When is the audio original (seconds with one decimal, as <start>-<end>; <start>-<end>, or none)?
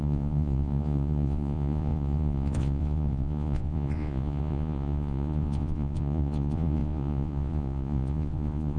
none